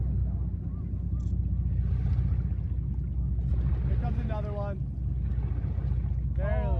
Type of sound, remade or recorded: recorded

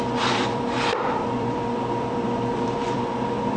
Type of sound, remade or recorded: remade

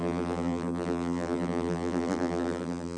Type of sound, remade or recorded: remade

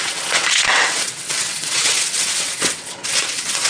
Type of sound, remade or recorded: remade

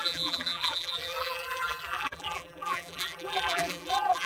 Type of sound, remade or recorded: remade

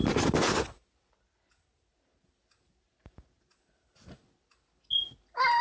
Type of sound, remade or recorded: recorded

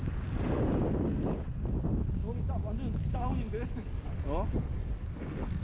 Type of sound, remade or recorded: recorded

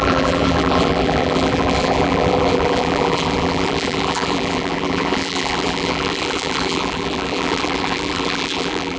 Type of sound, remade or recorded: remade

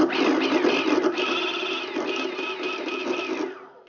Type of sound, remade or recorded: recorded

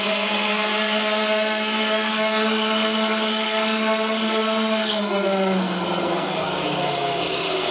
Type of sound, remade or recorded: remade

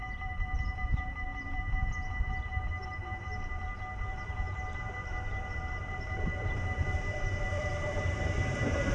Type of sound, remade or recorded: remade